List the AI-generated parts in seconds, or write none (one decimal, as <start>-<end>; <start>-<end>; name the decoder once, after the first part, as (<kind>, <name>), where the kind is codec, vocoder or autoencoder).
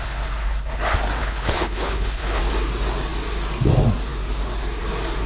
1.2-2.4 (codec, HILCodec)